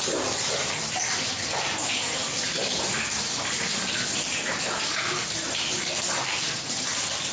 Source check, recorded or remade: recorded